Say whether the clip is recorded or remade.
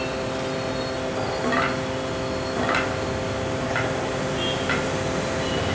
recorded